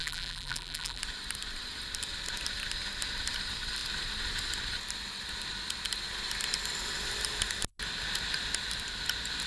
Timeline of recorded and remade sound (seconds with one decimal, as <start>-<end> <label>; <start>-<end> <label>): 0.0-1.0 remade; 1.0-9.5 recorded